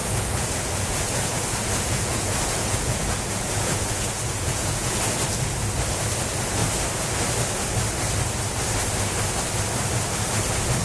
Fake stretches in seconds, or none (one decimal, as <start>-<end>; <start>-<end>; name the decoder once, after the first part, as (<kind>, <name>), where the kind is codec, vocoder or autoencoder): 0.0-5.0 (vocoder, Vocos)